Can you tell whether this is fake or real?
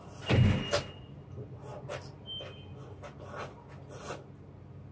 real